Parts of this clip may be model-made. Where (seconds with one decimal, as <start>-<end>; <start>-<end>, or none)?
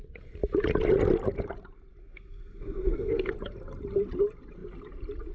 2.0-3.3